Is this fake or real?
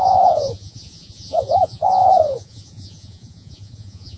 fake